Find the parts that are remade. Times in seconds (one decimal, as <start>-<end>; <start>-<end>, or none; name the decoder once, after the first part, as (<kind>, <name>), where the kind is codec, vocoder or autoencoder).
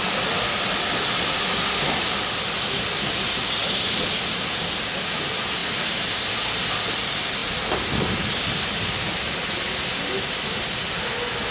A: none